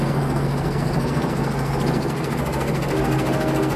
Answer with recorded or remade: remade